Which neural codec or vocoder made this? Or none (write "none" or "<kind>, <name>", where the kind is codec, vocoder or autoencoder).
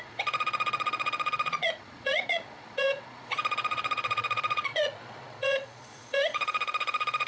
vocoder, Vocos